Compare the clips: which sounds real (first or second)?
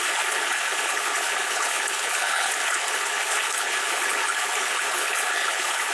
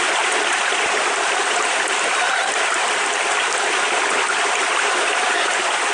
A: second